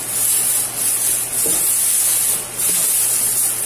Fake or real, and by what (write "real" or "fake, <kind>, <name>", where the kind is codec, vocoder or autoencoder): real